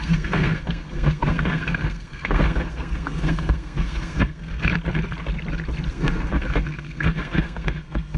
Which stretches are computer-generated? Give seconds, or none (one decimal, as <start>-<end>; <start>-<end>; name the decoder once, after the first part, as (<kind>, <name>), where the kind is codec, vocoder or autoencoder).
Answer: 0.0-4.7 (codec, SNAC); 5.9-8.2